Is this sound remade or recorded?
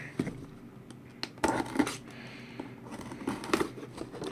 recorded